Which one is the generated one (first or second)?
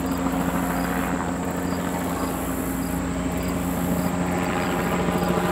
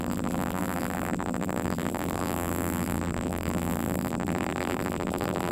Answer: second